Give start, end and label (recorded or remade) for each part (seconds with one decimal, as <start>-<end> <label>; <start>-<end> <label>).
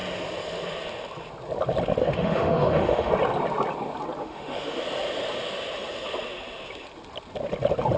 0.0-2.0 recorded; 2.0-3.1 remade; 3.1-4.2 recorded; 4.2-4.8 remade; 4.8-8.0 recorded